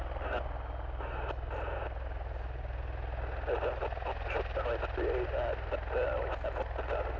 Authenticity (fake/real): real